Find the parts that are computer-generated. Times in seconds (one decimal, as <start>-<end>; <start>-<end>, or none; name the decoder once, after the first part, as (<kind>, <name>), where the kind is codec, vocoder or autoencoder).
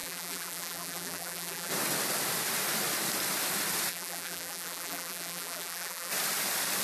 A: 0.0-1.7 (vocoder, BigVGAN v2); 3.9-6.1